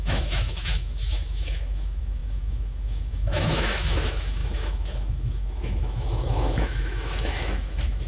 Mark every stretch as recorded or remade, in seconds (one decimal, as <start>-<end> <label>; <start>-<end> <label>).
0.0-8.1 remade